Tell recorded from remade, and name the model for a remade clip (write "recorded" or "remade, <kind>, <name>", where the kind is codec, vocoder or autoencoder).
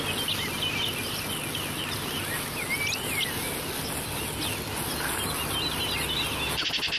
recorded